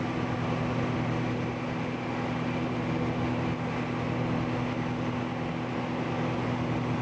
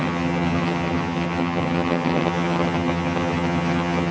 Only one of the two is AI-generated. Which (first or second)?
second